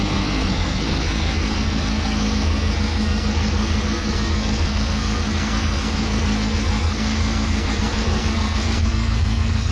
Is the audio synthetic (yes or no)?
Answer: yes